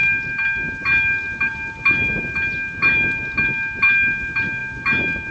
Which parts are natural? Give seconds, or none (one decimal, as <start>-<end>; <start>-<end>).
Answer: 0.0-5.3